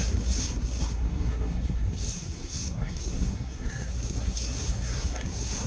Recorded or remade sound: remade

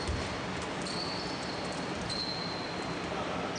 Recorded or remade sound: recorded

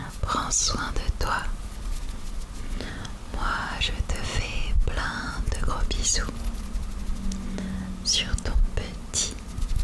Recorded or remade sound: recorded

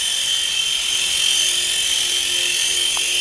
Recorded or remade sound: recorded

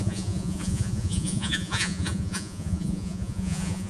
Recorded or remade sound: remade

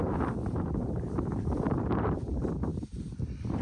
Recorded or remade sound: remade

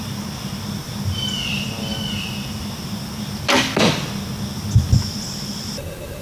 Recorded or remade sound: recorded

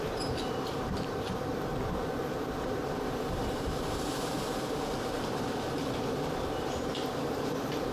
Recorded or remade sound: remade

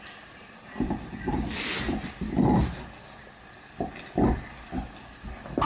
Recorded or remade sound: recorded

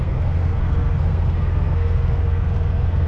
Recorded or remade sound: remade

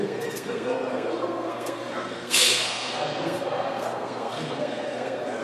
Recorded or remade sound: remade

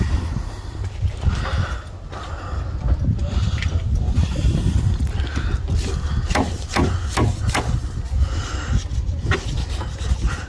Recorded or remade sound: recorded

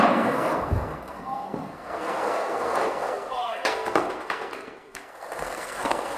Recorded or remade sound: remade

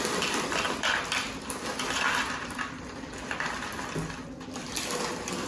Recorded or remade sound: recorded